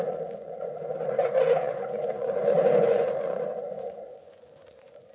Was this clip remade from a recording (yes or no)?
yes